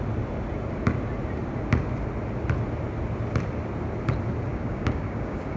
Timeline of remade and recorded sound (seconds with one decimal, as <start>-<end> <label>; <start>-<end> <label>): 0.0-4.5 recorded; 4.5-5.6 remade